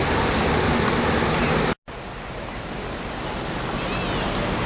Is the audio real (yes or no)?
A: yes